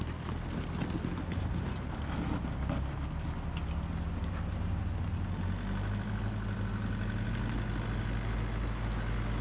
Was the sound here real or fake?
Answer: real